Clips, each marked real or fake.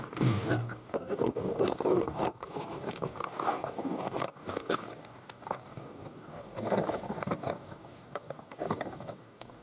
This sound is fake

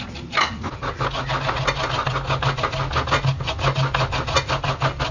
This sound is real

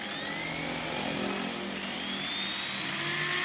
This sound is real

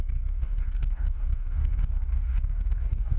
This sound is fake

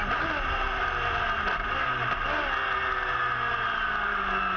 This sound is real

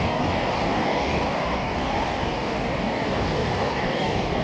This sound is fake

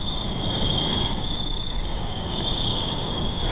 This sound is fake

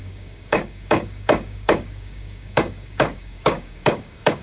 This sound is fake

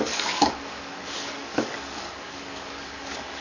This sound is fake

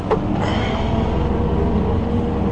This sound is real